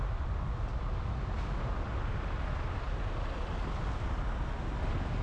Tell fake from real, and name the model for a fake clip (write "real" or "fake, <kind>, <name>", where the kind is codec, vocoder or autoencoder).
real